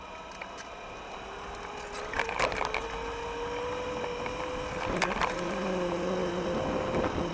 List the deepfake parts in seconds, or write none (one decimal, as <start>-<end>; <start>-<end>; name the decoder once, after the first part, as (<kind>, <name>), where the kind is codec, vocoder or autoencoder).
none